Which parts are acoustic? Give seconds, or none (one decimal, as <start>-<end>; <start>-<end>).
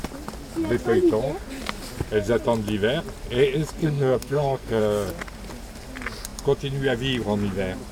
0.0-3.8; 4.8-7.9